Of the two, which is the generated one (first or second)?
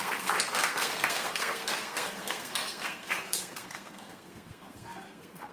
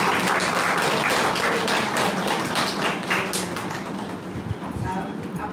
first